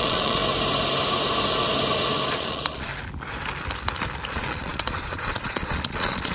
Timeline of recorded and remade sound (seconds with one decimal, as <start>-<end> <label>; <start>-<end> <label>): 0.0-0.4 remade; 0.4-2.3 recorded; 2.3-2.9 remade; 2.9-4.3 recorded; 4.3-6.3 remade